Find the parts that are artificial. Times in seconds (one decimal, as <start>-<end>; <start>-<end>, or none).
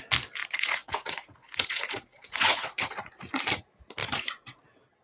0.4-3.4; 4.0-4.6